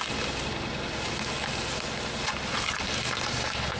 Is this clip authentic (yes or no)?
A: yes